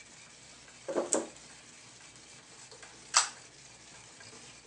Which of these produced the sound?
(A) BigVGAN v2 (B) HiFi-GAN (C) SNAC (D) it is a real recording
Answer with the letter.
D